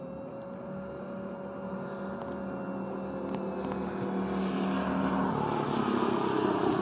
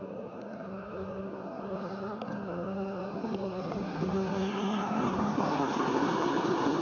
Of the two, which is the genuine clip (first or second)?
first